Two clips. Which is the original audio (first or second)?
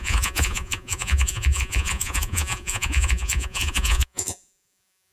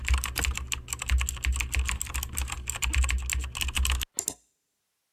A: second